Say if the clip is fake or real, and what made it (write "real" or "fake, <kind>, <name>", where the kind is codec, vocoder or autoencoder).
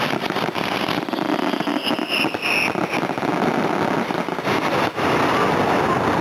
real